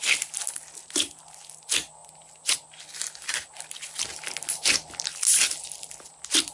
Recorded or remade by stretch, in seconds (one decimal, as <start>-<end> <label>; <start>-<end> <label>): 0.0-6.5 recorded